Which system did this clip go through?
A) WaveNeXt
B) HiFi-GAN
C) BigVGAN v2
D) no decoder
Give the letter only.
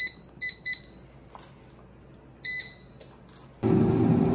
D